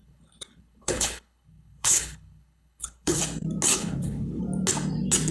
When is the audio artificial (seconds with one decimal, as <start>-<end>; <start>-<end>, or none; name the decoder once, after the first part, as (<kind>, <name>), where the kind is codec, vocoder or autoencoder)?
0.0-3.2 (codec, HILCodec); 3.7-4.4